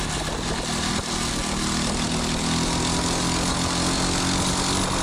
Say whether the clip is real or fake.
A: real